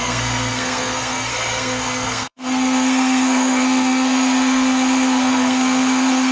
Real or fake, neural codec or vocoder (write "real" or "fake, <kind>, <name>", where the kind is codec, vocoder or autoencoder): fake, codec, SNAC